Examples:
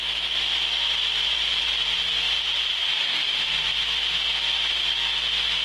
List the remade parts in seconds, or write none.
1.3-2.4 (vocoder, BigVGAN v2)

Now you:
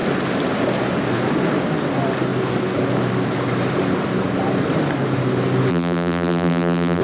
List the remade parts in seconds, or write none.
5.7-7.0 (vocoder, BigVGAN v2)

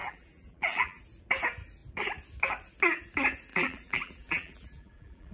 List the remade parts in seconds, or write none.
0.0-1.0 (vocoder, BigVGAN v2); 3.5-5.3

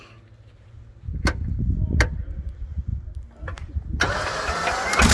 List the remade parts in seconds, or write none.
none

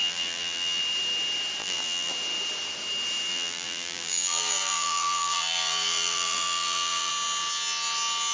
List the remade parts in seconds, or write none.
0.0-0.8 (vocoder, BigVGAN v2); 1.6-2.1; 3.3-7.1

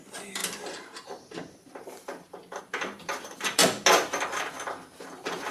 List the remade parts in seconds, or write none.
0.0-3.6 (vocoder, BigVGAN v2); 4.5-5.5